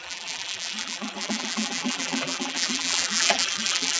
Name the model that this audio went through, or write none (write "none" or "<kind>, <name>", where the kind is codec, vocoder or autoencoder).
vocoder, BigVGAN v2